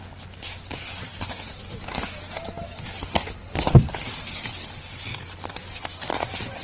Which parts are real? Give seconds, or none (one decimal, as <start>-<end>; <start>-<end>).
0.0-6.6